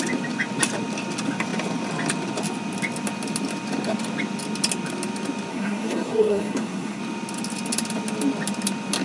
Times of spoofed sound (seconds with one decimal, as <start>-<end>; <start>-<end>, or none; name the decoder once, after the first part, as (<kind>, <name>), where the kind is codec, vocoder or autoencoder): 5.5-7.0 (codec, SNAC)